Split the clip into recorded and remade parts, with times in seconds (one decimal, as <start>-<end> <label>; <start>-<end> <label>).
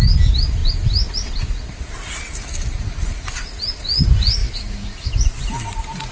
0.0-4.4 recorded; 4.4-5.1 remade; 5.1-6.1 recorded